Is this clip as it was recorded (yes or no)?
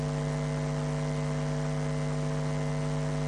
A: yes